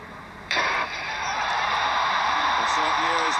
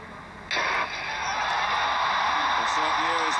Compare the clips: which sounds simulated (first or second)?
first